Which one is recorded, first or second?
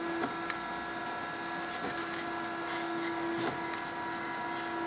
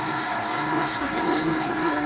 first